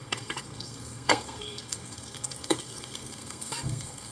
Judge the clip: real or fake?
fake